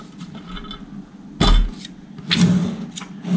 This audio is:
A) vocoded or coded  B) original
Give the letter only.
B